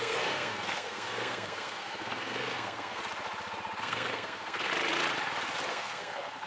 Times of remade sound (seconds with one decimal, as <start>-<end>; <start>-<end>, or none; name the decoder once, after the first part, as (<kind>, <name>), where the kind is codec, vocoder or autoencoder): 0.0-3.0 (codec, SNAC); 3.8-4.7; 5.7-6.5